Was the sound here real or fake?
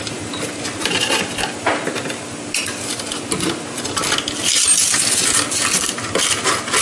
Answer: real